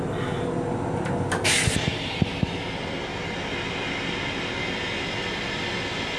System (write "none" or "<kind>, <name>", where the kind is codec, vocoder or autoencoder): none